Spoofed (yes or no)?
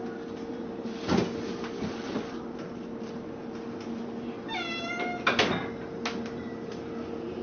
no